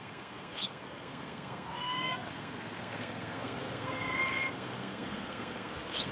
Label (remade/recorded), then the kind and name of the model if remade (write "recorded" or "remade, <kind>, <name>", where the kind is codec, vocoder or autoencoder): remade, codec, SNAC